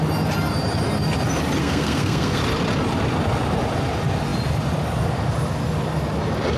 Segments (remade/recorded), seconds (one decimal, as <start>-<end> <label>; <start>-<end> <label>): 0.0-1.6 recorded; 1.6-2.4 remade; 2.4-6.6 recorded